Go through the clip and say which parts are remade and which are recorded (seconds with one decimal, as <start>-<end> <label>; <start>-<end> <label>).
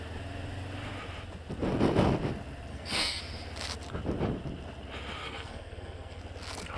0.0-2.7 recorded; 2.7-3.2 remade; 3.2-5.2 recorded; 5.2-6.2 remade; 6.2-6.8 recorded